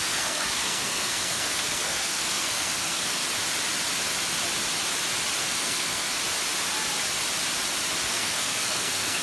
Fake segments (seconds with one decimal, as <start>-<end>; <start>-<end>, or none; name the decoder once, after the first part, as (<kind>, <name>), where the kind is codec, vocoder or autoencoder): 0.0-3.2 (codec, SNAC); 5.4-6.2; 8.1-9.2